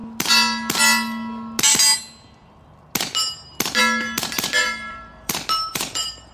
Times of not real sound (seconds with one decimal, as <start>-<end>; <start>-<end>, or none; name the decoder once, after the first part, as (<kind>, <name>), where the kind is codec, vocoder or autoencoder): 4.6-5.3 (vocoder, BigVGAN v2); 5.7-6.3

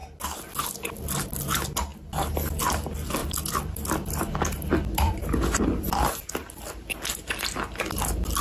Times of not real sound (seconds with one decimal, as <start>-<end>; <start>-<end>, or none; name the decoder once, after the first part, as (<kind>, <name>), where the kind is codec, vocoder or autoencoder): 0.0-0.6 (vocoder, BigVGAN v2); 1.9-2.6; 3.2-4.3

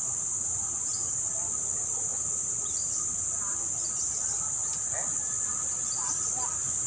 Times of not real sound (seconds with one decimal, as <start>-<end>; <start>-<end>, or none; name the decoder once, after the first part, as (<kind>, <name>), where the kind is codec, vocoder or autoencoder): none

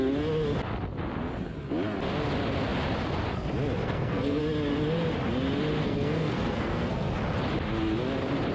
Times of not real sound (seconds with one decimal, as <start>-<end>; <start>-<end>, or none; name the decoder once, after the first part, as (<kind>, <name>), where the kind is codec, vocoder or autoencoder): 3.8-4.4 (codec, SNAC); 5.8-7.2

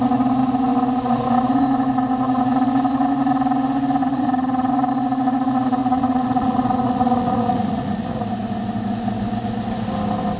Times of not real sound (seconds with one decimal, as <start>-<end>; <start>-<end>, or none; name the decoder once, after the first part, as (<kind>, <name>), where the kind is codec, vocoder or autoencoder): 4.0-4.7 (vocoder, Vocos); 5.8-8.2

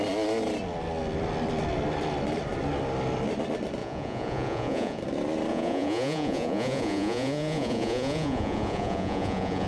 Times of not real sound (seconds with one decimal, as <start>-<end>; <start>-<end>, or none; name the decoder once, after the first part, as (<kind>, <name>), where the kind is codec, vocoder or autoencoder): 3.8-5.0 (vocoder, Vocos); 5.5-9.7

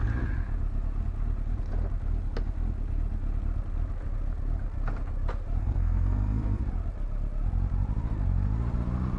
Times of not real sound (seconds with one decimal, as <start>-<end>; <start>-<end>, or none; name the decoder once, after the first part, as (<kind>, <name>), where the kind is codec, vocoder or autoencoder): 5.6-6.6 (codec, SNAC)